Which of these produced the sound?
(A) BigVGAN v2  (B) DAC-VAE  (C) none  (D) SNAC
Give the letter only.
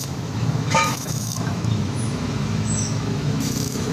B